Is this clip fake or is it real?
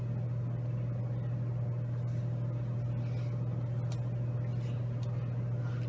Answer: real